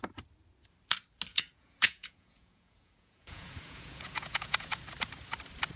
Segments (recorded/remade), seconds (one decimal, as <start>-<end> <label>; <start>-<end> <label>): 0.0-1.3 recorded; 1.3-4.8 remade; 4.8-5.8 recorded